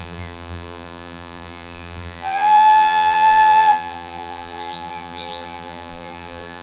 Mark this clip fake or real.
fake